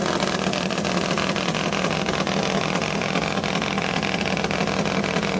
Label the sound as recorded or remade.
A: recorded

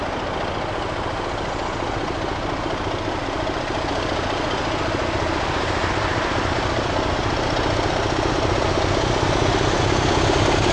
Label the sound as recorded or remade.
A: recorded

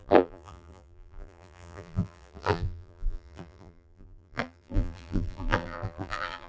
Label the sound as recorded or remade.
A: remade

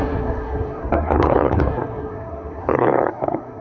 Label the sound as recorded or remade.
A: remade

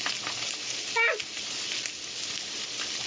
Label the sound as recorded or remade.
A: recorded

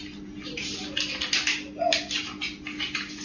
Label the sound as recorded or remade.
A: recorded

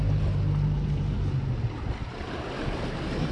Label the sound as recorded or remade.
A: recorded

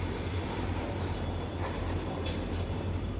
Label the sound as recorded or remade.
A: remade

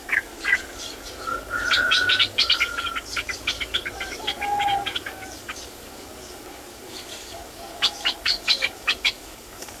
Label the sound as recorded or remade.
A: remade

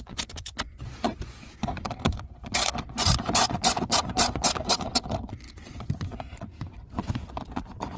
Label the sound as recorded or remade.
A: remade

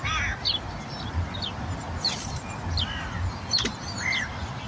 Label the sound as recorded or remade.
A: recorded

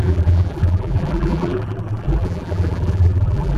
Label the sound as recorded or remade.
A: remade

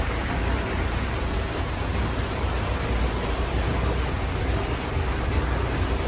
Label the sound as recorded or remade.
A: remade